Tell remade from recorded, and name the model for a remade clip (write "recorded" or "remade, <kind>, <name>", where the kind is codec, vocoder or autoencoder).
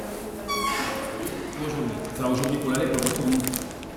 recorded